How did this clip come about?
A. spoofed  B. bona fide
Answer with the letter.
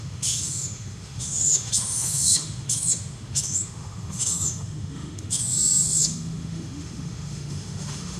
A